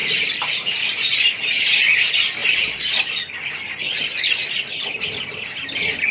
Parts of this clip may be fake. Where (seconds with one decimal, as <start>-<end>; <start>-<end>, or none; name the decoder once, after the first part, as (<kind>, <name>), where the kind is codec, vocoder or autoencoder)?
2.4-3.0 (vocoder, BigVGAN v2)